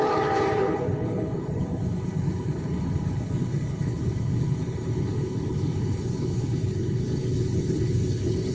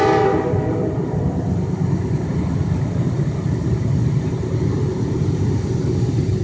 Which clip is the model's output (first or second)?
first